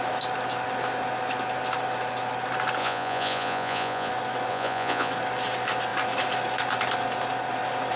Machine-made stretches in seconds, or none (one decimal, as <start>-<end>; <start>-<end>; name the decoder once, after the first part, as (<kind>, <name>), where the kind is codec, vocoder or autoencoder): 2.8-4.1 (vocoder, Vocos); 4.5-5.1